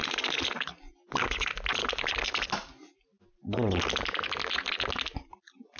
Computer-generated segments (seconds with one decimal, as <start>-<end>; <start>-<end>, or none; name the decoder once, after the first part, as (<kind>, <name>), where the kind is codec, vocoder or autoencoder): none